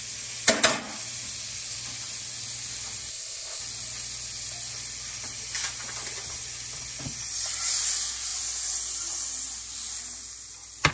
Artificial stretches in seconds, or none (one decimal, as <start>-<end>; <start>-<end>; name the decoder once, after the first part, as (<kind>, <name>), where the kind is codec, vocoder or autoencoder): 3.1-3.6 (codec, ZipCodec)